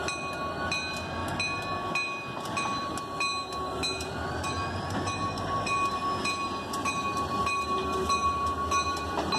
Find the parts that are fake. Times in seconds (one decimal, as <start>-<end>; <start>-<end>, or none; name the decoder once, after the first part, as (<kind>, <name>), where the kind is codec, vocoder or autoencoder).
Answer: none